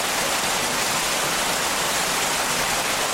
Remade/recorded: remade